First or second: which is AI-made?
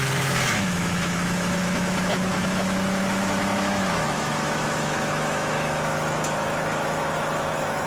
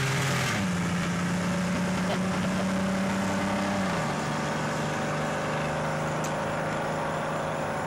first